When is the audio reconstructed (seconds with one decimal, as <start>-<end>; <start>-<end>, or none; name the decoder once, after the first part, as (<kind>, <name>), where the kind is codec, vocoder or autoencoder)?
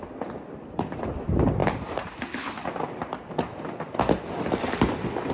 0.0-5.3 (vocoder, BigVGAN v2)